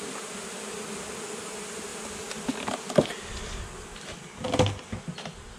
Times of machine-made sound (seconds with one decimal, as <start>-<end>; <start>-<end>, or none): none